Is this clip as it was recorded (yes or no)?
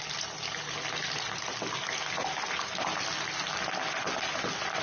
yes